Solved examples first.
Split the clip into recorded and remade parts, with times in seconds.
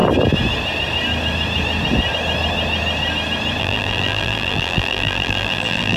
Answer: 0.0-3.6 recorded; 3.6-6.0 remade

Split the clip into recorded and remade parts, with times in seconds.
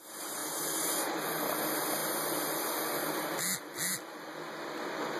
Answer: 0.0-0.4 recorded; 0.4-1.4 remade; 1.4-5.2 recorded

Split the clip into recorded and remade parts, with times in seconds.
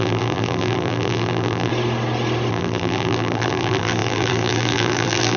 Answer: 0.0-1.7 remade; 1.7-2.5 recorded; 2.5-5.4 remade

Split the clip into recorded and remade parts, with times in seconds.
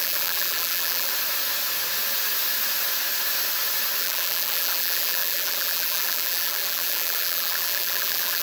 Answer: 0.0-1.1 remade; 1.1-4.0 recorded; 4.0-8.4 remade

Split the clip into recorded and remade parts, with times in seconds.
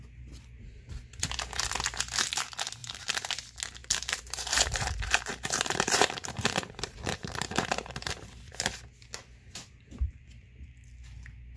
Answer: 0.0-2.8 recorded; 2.8-3.3 remade; 3.3-3.8 recorded; 3.8-8.1 remade; 8.1-11.6 recorded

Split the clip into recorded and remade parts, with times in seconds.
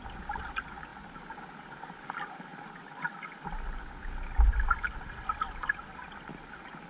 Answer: 0.0-0.9 recorded; 0.9-2.1 remade; 2.1-2.5 recorded; 2.5-4.1 remade; 4.1-4.5 recorded; 4.5-6.9 remade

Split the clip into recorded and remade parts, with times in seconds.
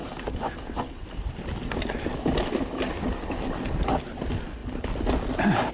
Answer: 0.0-3.4 remade; 3.4-5.7 recorded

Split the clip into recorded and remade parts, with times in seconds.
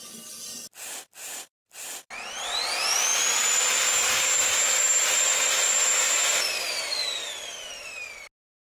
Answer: 0.0-1.2 recorded; 1.2-2.1 remade; 2.1-3.1 recorded; 3.1-7.3 remade; 7.3-8.8 recorded